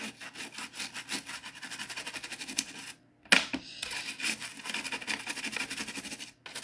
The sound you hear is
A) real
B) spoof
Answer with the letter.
A